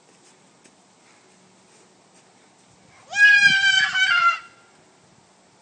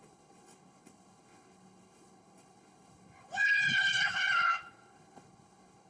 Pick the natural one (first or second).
first